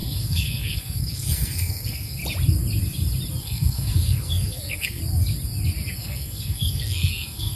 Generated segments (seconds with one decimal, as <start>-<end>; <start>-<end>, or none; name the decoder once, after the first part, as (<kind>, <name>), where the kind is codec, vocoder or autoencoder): 0.0-2.2 (codec, SNAC); 3.4-5.0; 5.9-7.6